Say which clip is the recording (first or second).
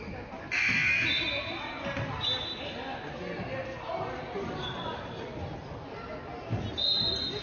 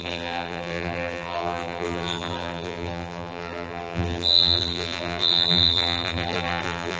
first